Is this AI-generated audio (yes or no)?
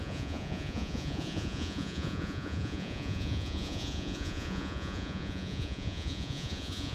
yes